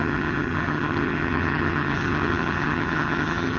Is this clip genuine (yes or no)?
no